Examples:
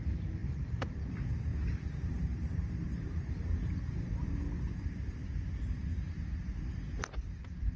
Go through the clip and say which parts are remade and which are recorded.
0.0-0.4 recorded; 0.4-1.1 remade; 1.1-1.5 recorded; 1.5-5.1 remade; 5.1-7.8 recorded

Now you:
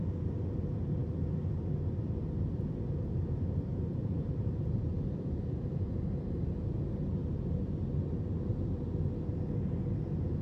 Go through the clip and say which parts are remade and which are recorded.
0.0-3.9 recorded; 3.9-6.5 remade; 6.5-10.4 recorded